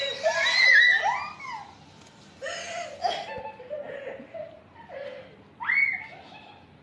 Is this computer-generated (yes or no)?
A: no